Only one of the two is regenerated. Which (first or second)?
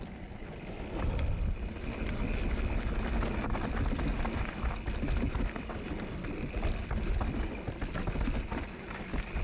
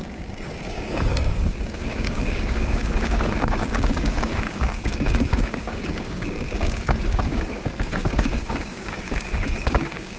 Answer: second